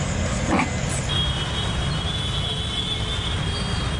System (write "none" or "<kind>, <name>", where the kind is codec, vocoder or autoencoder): none